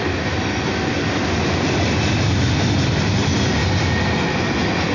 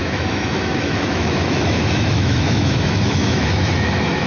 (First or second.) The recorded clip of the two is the first